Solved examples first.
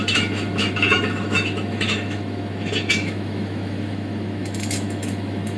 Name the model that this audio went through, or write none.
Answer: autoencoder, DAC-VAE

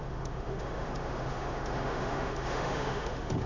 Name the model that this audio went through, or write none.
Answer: autoencoder, DAC-VAE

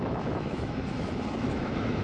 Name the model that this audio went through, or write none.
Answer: autoencoder, DAC-VAE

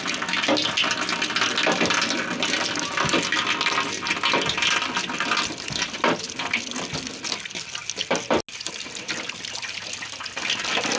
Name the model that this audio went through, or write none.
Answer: none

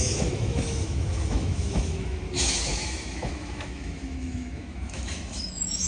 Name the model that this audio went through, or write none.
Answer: autoencoder, DAC-VAE